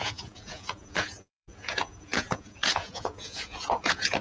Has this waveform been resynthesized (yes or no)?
yes